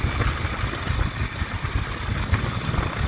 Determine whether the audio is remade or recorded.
recorded